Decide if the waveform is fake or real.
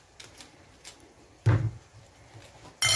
real